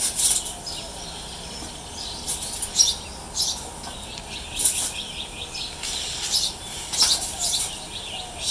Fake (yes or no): no